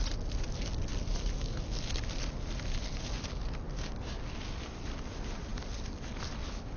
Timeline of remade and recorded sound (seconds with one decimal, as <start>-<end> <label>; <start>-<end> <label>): 0.0-6.8 recorded